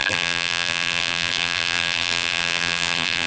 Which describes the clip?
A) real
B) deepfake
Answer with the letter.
B